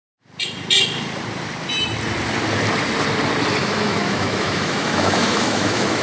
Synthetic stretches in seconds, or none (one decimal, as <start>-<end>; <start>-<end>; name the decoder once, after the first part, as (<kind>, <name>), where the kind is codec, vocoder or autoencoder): 3.6-6.0 (autoencoder, DAC-VAE)